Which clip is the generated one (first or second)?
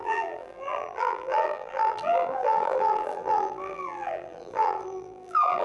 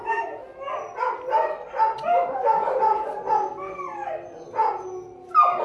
first